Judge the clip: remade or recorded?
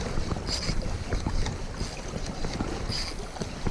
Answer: recorded